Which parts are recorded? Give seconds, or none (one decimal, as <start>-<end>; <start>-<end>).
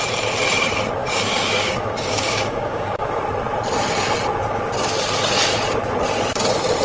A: 0.0-1.0; 3.2-6.8